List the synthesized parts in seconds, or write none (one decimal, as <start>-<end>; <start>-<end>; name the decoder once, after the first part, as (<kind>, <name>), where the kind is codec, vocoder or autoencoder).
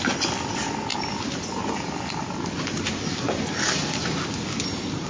none